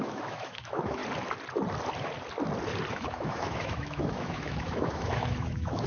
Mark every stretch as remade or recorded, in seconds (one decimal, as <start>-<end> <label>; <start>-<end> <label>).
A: 0.0-1.0 remade; 1.0-2.9 recorded; 2.9-5.9 remade